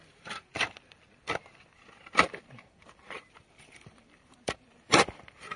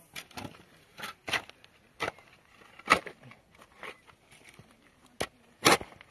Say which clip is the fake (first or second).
first